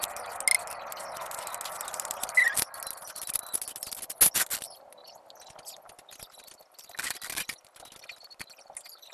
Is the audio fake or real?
real